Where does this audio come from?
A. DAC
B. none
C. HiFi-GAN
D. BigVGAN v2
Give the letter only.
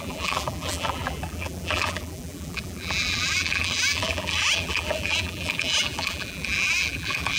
D